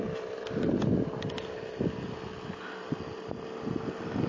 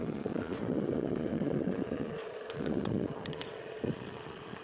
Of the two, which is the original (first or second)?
first